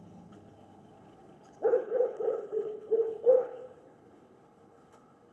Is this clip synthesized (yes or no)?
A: yes